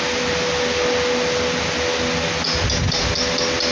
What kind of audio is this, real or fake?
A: real